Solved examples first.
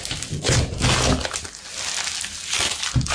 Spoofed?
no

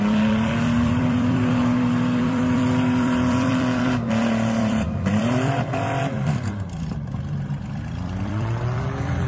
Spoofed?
yes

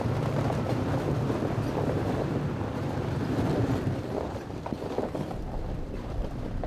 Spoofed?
yes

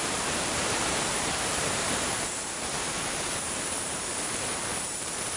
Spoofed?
yes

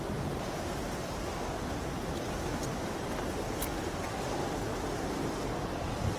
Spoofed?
no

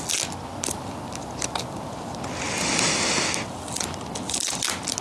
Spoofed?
no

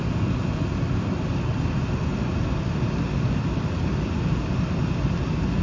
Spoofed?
yes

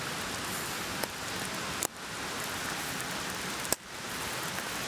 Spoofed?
no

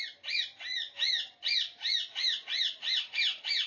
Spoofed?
no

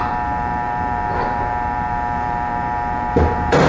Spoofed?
yes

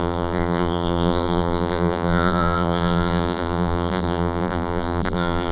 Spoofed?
yes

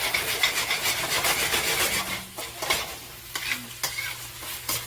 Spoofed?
no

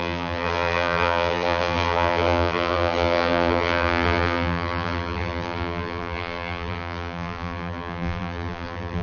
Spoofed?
yes